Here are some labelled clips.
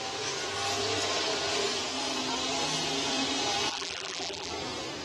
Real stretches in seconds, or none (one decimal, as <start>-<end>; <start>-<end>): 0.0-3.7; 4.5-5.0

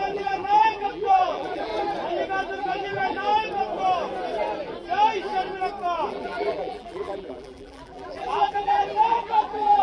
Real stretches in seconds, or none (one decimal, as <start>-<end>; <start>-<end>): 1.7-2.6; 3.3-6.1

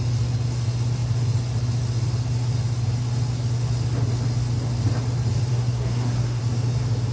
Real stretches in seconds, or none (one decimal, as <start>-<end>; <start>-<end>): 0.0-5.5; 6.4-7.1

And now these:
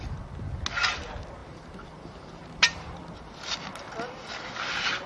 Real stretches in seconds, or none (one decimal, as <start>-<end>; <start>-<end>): 0.0-1.4; 3.0-5.1

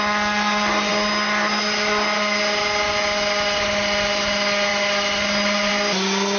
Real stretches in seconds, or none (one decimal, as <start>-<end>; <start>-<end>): 0.0-6.4

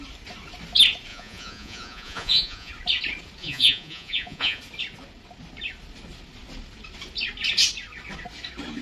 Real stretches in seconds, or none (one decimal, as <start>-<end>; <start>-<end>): 0.0-1.1; 2.7-3.4; 4.6-8.8

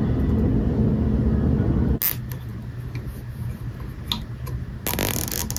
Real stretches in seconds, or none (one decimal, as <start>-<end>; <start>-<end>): 0.0-5.6

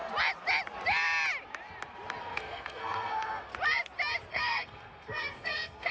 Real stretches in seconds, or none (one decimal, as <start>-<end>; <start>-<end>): 0.0-2.2; 3.5-4.3